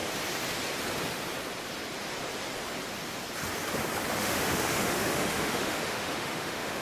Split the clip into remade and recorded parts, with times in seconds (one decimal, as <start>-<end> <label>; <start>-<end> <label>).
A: 0.0-4.1 recorded; 4.1-6.8 remade